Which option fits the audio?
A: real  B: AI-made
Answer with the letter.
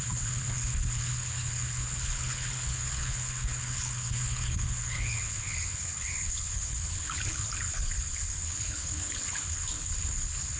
B